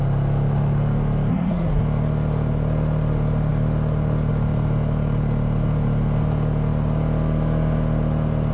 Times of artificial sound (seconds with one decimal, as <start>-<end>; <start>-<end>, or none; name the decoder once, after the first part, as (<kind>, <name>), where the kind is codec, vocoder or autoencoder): 1.3-1.8 (codec, SNAC)